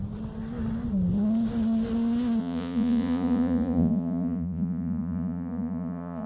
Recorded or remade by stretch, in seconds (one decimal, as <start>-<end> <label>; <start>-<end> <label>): 0.0-2.4 recorded; 2.4-6.3 remade

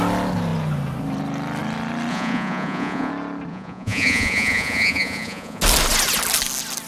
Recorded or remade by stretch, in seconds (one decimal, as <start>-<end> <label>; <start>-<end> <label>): 0.0-2.1 recorded; 2.1-3.1 remade; 3.1-3.5 recorded; 3.5-5.6 remade; 5.6-6.9 recorded

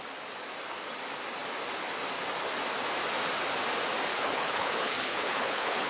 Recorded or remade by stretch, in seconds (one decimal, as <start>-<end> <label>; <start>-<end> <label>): 0.0-4.1 recorded; 4.1-5.9 remade

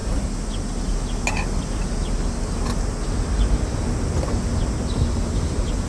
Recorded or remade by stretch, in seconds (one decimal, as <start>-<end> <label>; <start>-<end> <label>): 0.0-5.9 recorded

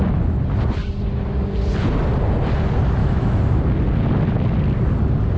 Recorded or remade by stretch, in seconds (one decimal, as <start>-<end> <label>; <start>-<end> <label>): 0.0-3.0 recorded; 3.0-3.6 remade; 3.6-5.4 recorded

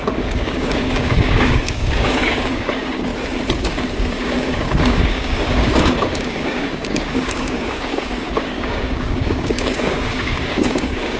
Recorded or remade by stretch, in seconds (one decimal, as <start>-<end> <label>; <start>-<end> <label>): 0.0-3.1 remade; 3.1-3.6 recorded; 3.6-11.2 remade

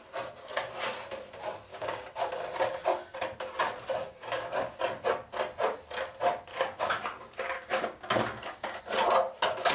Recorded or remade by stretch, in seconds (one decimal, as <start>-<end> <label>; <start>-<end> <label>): 0.0-1.7 recorded; 1.7-2.3 remade; 2.3-4.0 recorded; 4.0-4.8 remade; 4.8-6.5 recorded; 6.5-8.8 remade; 8.8-9.7 recorded